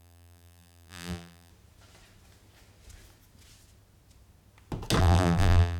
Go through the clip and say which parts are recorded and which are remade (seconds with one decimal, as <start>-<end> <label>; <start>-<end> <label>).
0.0-1.5 remade; 1.5-5.0 recorded; 5.0-5.8 remade